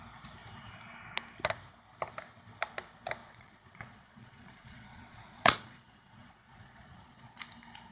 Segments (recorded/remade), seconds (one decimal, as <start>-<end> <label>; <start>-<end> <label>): 0.0-3.2 recorded; 3.2-7.4 remade; 7.4-7.9 recorded